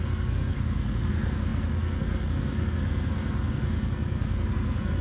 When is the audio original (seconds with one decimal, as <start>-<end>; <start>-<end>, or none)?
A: none